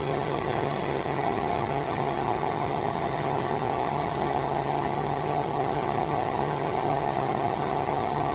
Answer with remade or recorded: remade